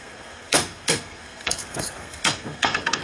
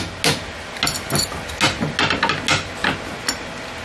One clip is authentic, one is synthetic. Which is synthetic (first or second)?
first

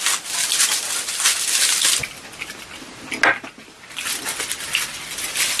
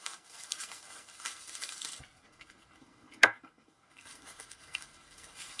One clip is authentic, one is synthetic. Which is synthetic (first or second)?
second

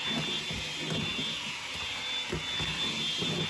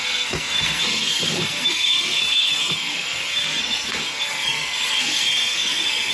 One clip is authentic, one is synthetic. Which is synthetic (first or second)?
second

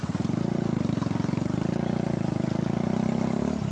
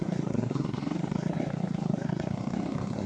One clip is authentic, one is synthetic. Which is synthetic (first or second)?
second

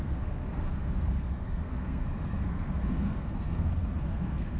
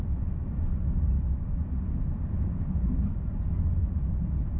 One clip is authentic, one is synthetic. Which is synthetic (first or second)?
first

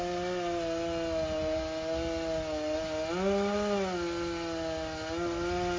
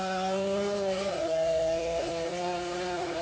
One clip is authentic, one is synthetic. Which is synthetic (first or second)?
second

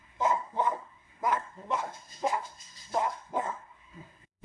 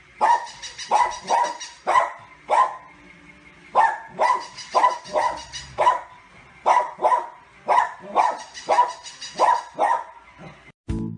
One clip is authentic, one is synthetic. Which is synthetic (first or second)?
first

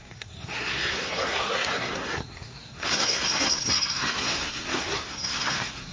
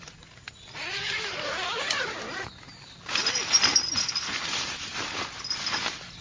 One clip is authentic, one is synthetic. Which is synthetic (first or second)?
first